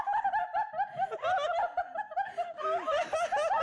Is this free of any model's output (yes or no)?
yes